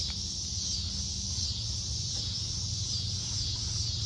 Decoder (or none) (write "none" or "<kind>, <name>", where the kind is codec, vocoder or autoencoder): none